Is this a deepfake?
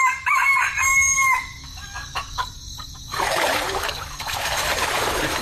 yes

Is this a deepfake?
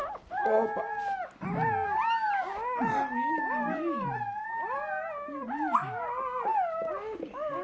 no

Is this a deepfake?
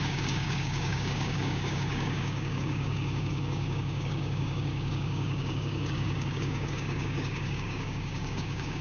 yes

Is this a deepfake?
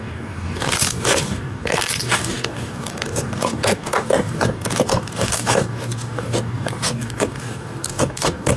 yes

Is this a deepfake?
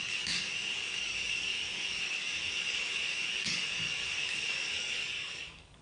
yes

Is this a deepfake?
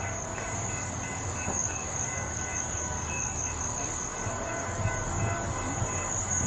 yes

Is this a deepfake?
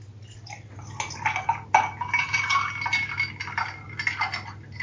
no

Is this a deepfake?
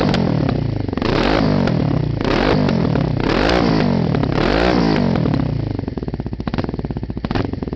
no